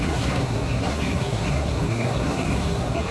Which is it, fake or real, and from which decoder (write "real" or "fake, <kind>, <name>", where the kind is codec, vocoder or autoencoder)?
fake, codec, SNAC